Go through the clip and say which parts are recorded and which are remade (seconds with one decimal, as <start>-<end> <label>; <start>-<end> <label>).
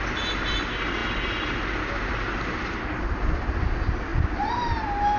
0.0-4.1 recorded; 4.1-5.2 remade